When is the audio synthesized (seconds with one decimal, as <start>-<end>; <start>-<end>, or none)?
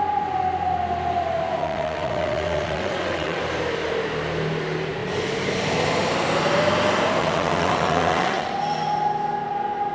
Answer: 1.6-3.4; 7.2-8.5